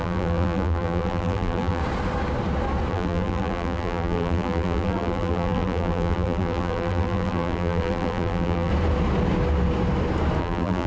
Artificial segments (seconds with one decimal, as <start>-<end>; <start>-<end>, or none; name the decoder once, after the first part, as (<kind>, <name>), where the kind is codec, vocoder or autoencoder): 0.0-1.8 (vocoder, BigVGAN v2); 2.9-8.7; 10.4-10.9